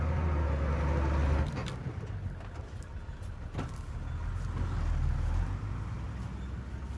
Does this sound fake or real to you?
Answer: real